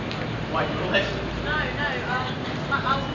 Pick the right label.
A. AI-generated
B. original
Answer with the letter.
B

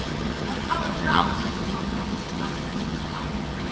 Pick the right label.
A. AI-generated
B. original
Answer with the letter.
A